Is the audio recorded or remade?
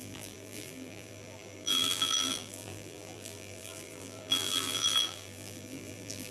remade